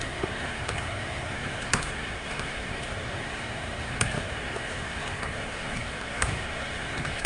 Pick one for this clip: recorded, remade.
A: remade